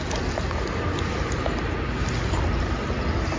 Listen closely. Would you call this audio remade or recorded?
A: recorded